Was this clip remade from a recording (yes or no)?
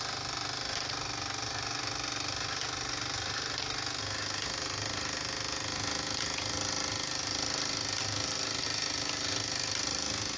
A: no